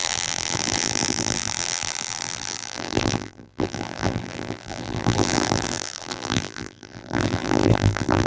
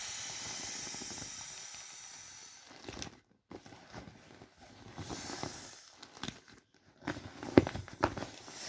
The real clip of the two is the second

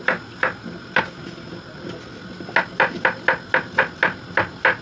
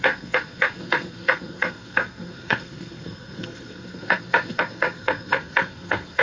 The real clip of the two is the first